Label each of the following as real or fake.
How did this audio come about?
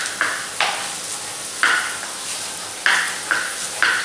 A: real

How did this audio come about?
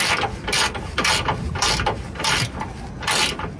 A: real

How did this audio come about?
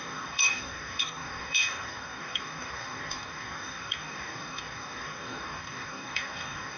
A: fake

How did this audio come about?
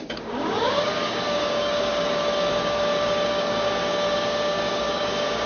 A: fake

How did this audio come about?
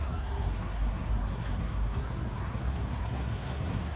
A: fake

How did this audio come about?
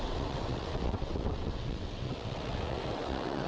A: fake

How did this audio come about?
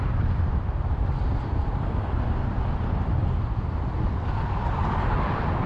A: real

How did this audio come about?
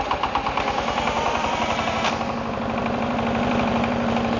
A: fake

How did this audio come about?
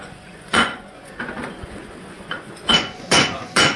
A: fake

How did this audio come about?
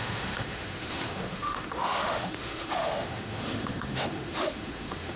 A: fake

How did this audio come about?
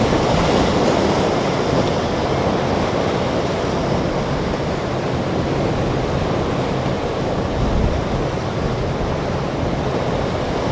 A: real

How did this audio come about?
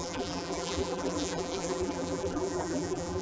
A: fake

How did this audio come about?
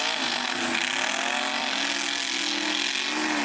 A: real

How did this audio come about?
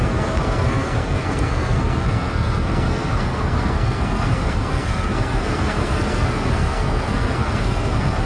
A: fake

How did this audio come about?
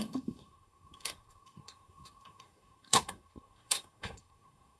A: fake